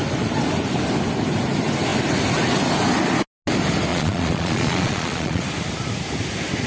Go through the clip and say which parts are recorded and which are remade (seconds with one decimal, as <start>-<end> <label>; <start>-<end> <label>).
0.0-3.9 recorded; 3.9-5.4 remade; 5.4-6.7 recorded